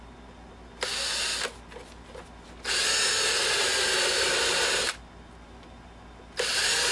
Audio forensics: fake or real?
real